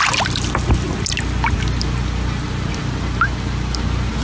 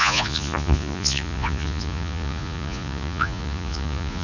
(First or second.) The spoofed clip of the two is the second